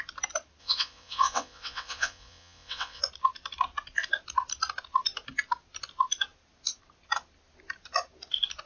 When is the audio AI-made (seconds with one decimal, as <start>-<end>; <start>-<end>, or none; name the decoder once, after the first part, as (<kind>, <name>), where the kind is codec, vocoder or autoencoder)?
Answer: 0.6-3.0 (vocoder, WaveNeXt)